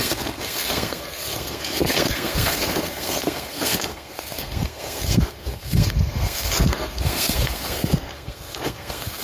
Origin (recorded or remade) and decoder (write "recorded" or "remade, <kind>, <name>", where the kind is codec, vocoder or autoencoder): remade, codec, SNAC